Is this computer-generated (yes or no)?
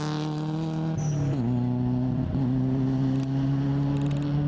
no